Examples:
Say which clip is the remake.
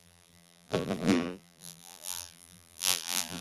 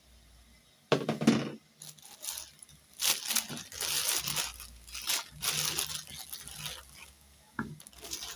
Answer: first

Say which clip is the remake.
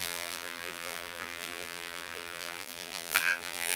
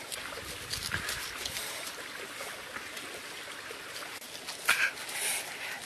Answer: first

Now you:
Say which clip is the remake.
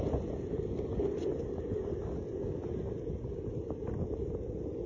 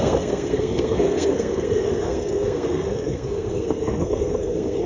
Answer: second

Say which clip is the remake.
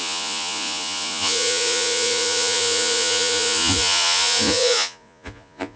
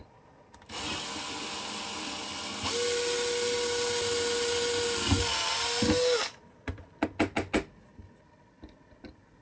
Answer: first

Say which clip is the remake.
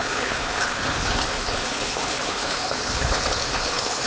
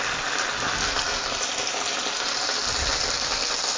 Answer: first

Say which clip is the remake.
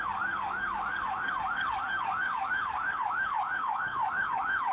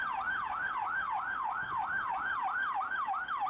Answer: first